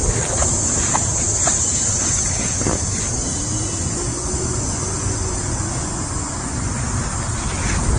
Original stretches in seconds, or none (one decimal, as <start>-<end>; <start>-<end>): 0.0-4.1; 6.8-8.0